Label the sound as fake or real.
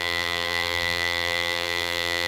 fake